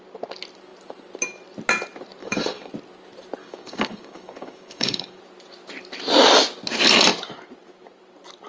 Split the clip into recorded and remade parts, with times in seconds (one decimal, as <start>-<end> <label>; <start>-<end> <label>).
0.0-2.2 recorded; 2.2-2.7 remade; 2.7-3.4 recorded; 3.4-5.2 remade; 5.2-8.5 recorded